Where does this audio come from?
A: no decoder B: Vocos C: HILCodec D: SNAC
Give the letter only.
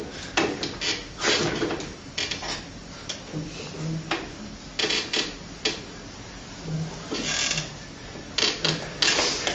A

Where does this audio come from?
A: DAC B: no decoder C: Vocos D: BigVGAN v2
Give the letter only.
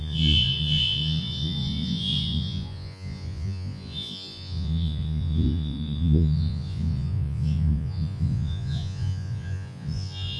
C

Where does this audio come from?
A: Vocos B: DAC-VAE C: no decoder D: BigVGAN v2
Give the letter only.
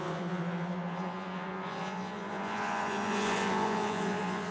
A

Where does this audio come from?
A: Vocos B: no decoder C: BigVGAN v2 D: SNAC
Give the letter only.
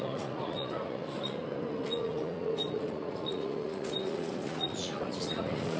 A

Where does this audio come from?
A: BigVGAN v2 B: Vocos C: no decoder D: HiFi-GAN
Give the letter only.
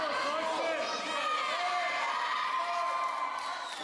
C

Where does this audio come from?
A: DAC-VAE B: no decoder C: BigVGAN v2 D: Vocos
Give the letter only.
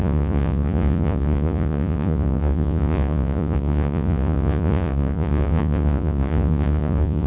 D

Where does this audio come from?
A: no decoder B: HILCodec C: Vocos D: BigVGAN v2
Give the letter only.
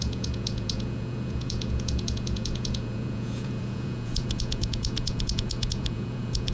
C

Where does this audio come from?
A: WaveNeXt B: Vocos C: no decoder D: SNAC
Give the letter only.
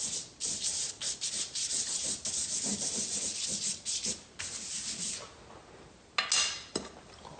C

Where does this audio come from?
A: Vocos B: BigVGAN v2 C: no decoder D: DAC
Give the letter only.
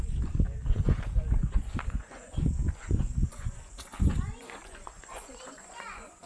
A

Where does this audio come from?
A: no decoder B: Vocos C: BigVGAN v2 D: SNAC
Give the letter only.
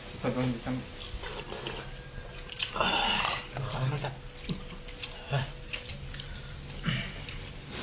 A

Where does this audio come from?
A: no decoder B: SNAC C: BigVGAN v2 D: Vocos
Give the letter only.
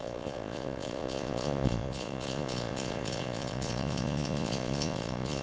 D